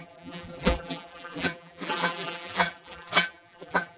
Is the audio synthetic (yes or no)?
yes